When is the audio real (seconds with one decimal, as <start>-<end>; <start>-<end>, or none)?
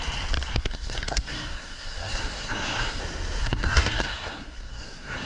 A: 0.0-0.5; 3.0-3.4